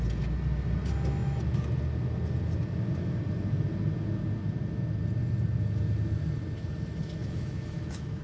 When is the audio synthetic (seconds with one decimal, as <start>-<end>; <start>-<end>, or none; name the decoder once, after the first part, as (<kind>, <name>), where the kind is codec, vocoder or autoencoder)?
7.2-8.2 (autoencoder, DAC-VAE)